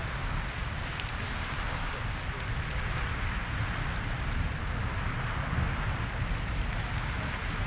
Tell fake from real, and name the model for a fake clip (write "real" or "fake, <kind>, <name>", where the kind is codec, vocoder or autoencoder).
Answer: real